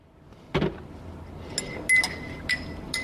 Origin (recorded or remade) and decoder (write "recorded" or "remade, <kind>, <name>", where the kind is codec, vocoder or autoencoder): recorded